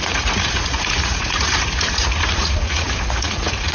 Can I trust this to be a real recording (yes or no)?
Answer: no